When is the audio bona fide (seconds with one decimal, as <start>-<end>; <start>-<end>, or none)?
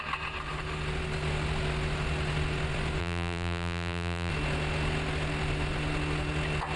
0.0-3.0; 4.3-6.8